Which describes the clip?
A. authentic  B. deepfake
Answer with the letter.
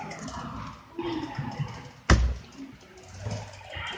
A